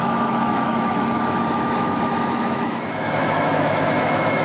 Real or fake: fake